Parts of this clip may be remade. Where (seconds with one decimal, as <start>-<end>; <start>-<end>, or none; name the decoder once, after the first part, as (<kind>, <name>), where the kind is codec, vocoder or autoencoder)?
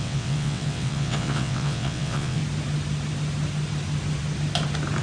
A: 0.0-2.4 (vocoder, WaveNeXt)